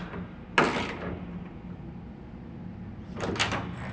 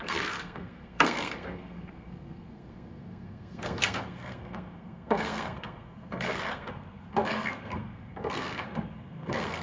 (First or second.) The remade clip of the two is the second